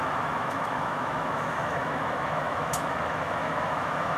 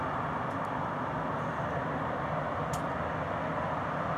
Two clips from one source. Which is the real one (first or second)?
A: second